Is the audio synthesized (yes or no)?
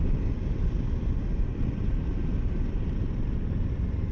no